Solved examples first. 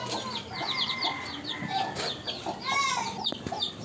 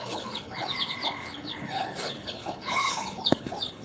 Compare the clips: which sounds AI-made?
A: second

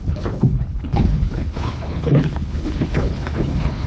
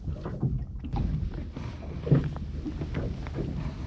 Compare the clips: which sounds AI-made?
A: first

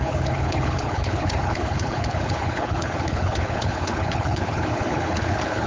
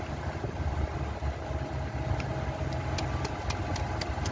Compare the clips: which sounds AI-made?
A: first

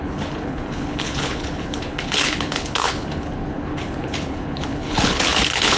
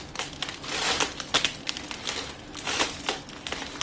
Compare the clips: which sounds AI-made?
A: first